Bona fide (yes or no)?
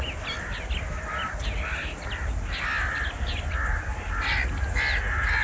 yes